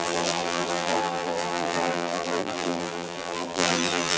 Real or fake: fake